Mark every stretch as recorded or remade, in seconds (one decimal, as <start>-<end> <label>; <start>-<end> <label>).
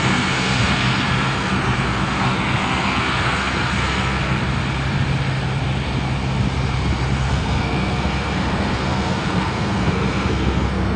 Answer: 0.0-4.4 remade; 4.4-7.3 recorded; 7.3-11.0 remade